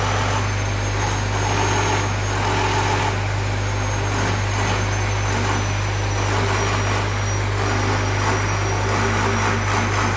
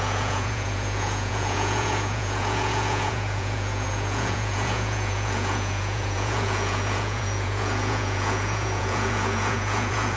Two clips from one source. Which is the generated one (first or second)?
second